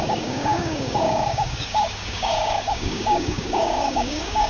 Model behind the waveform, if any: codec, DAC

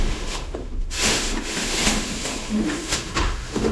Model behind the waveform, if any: autoencoder, DAC-VAE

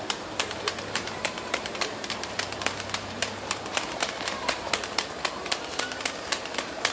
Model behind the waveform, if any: vocoder, BigVGAN v2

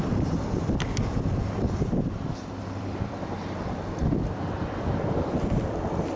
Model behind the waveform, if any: vocoder, BigVGAN v2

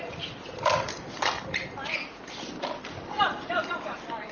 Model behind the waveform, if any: vocoder, BigVGAN v2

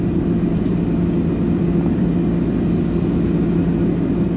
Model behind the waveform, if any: none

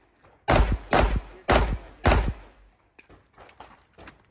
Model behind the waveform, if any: none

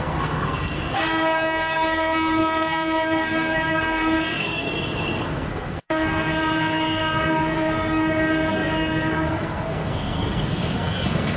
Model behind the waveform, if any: codec, SNAC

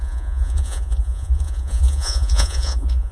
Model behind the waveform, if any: vocoder, Vocos